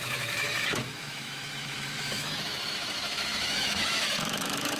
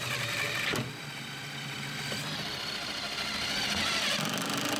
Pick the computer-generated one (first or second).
first